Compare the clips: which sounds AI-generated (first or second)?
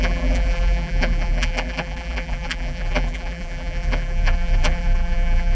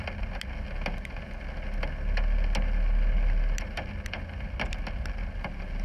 first